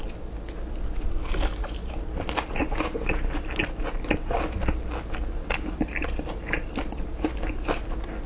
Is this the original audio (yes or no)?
yes